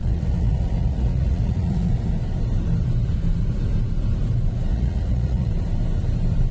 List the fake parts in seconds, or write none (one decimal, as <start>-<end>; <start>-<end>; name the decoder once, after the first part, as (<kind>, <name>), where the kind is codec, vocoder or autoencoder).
0.0-1.9 (vocoder, Vocos); 4.7-5.5